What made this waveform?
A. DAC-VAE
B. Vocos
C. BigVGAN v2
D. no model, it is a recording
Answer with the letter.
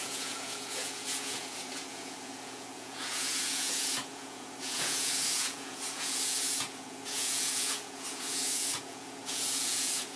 B